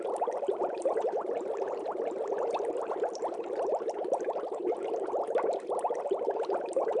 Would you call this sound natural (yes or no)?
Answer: no